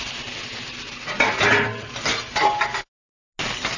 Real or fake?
real